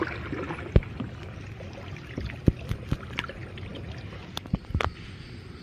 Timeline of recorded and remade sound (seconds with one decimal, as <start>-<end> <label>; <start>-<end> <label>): 0.0-5.6 recorded